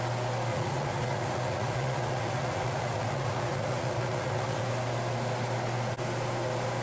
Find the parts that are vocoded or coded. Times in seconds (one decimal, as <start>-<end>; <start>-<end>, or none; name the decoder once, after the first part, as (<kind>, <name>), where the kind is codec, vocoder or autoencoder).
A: 0.5-4.6 (vocoder, Vocos)